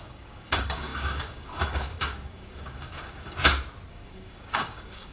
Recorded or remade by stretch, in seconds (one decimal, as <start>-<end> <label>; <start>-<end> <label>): 0.0-3.4 remade; 3.4-3.9 recorded; 3.9-5.1 remade